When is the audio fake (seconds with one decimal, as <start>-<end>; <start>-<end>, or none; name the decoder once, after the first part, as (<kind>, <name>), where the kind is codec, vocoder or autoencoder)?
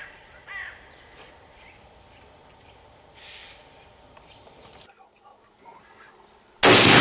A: none